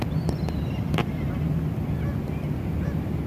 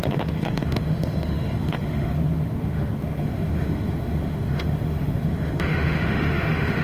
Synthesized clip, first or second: second